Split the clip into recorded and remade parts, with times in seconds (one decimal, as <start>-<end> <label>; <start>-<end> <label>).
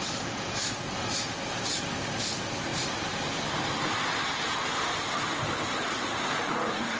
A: 0.0-7.0 recorded